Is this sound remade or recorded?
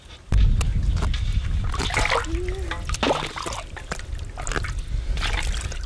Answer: recorded